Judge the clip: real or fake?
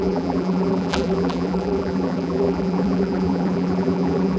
fake